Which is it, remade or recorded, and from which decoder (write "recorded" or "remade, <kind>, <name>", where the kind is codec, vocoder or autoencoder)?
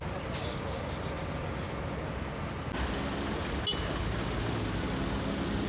recorded